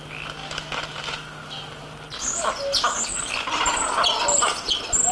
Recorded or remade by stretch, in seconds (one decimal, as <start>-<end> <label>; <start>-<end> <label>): 0.0-5.1 recorded